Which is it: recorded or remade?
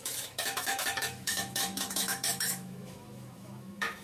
remade